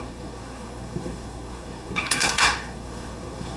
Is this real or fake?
fake